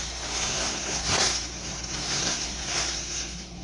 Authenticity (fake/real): fake